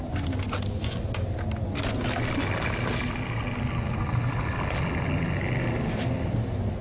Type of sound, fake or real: real